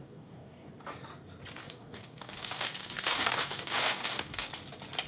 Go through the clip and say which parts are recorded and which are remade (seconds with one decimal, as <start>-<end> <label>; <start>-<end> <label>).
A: 0.0-0.7 remade; 0.7-1.6 recorded; 1.6-4.5 remade; 4.5-5.1 recorded